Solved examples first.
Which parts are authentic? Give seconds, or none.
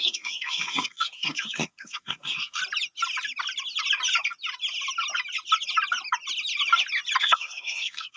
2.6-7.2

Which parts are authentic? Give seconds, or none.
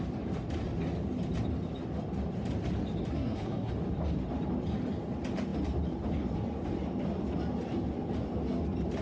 0.0-3.1; 3.7-9.0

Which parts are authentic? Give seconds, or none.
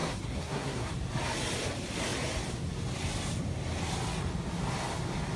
0.9-5.4